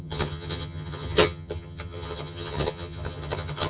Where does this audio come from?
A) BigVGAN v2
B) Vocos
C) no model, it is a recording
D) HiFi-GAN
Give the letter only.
D